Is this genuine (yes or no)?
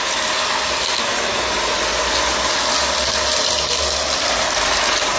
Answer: yes